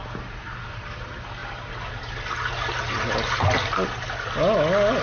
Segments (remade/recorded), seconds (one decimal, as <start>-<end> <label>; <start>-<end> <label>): 0.0-5.0 recorded